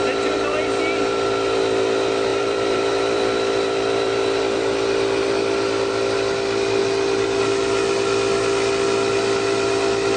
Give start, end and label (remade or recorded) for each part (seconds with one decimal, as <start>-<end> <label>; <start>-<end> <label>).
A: 0.0-0.6 remade; 0.6-2.3 recorded; 2.3-4.4 remade; 4.4-10.2 recorded

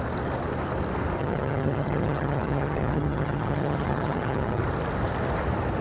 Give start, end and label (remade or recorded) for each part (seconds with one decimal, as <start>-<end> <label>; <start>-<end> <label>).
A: 0.0-1.2 recorded; 1.2-4.6 remade; 4.6-5.8 recorded